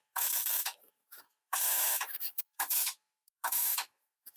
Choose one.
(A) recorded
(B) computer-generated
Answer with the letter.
B